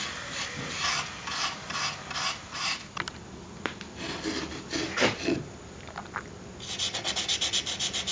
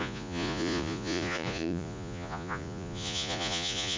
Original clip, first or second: first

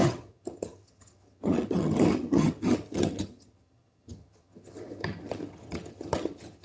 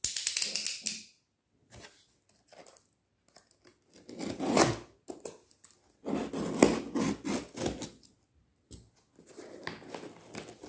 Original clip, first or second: second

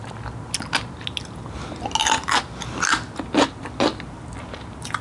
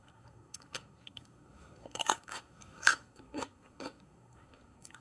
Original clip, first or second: first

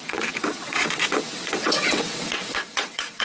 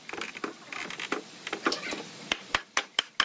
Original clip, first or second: second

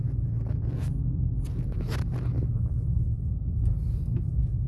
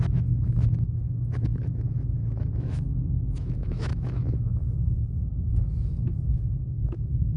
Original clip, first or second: first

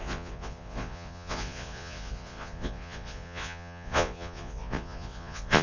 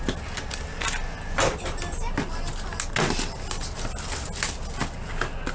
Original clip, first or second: second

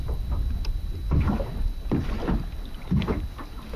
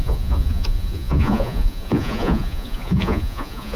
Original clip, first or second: first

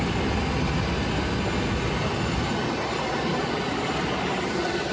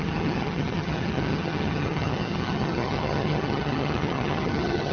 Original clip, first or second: first